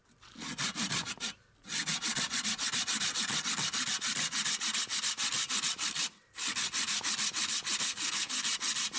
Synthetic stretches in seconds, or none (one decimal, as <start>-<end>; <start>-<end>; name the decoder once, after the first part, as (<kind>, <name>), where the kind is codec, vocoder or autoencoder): 7.8-8.4 (codec, SNAC)

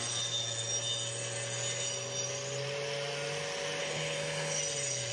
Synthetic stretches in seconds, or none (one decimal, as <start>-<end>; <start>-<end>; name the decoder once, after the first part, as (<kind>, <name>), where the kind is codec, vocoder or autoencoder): 3.8-4.6 (codec, HILCodec)

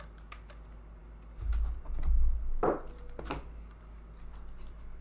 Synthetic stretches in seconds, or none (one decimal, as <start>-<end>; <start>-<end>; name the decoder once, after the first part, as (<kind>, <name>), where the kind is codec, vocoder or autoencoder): none

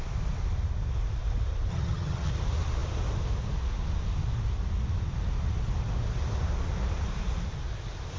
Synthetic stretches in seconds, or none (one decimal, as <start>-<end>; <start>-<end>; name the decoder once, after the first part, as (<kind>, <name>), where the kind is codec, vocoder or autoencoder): 1.7-2.3 (vocoder, HiFi-GAN)